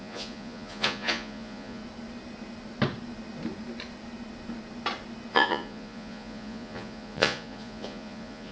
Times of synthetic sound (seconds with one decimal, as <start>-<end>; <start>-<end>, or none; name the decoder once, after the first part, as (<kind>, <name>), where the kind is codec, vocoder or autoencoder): 0.0-1.8 (vocoder, Vocos); 5.3-8.5